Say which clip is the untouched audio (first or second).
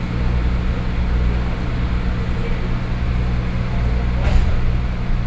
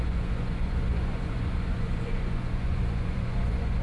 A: first